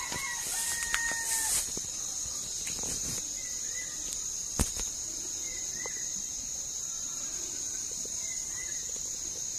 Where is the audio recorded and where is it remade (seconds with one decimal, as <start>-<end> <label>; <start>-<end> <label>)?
0.0-6.3 recorded; 6.3-8.9 remade; 8.9-9.6 recorded